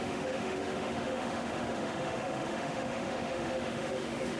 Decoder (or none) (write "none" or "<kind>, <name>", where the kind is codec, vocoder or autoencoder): autoencoder, DAC-VAE